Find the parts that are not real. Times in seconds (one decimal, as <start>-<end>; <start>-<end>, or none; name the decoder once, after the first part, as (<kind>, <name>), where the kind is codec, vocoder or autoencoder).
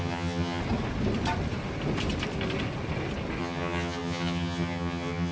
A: 0.0-0.6 (vocoder, HiFi-GAN); 3.4-5.3